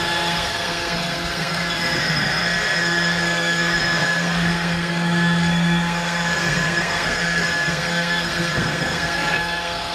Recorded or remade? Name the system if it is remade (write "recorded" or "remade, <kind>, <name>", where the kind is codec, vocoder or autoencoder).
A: remade, codec, SNAC